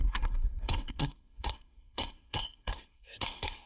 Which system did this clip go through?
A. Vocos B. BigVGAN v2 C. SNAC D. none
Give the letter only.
C